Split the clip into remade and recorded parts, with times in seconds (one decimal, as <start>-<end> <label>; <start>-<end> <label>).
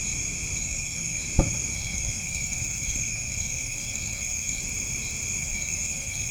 0.0-0.6 recorded; 0.6-1.2 remade; 1.2-1.7 recorded; 1.7-4.6 remade; 4.6-5.4 recorded; 5.4-6.3 remade